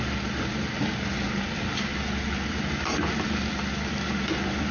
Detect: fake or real real